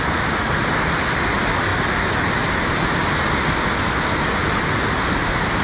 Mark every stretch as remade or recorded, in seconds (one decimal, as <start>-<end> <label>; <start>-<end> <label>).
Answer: 0.0-5.6 recorded